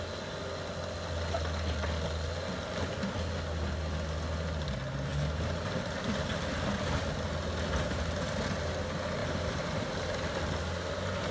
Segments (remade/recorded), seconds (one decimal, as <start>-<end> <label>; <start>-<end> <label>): 0.0-9.2 recorded; 9.2-10.4 remade; 10.4-11.3 recorded